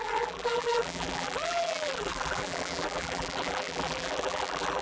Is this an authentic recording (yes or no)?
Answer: no